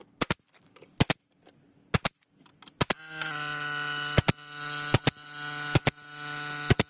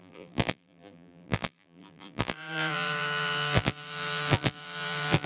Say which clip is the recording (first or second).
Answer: first